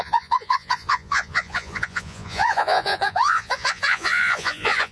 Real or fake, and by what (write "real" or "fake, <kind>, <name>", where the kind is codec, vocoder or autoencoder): fake, vocoder, Vocos